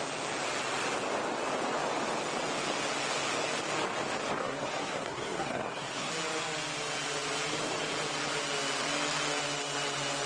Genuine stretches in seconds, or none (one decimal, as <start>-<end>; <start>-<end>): 0.0-4.4; 6.1-10.3